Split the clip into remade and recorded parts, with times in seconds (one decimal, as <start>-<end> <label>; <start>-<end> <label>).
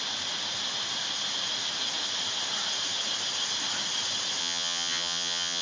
0.0-4.4 recorded; 4.4-5.6 remade